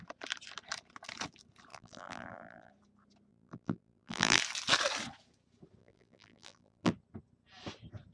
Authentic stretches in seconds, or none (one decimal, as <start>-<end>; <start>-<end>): 0.0-1.7; 2.7-3.3; 4.4-5.8; 6.9-8.1